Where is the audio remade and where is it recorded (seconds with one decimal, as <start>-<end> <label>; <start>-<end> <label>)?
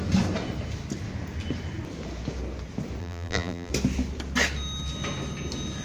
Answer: 0.0-3.0 recorded; 3.0-3.7 remade; 3.7-5.8 recorded